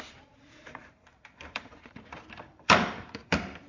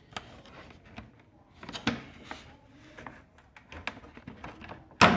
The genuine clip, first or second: second